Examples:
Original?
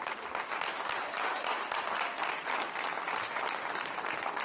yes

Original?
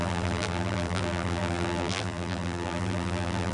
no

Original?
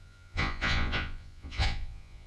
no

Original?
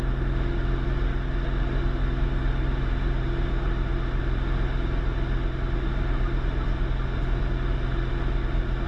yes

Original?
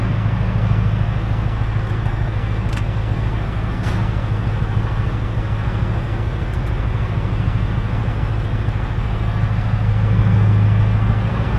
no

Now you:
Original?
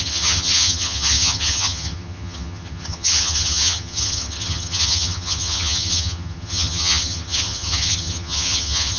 no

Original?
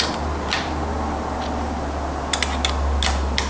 yes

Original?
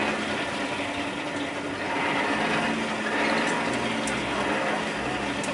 yes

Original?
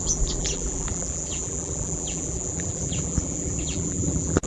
no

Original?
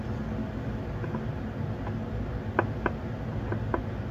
yes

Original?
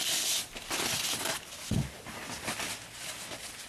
yes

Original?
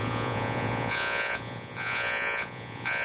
no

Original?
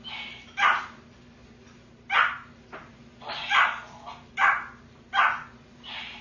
yes